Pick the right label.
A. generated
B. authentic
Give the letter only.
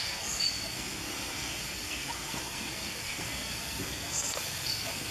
A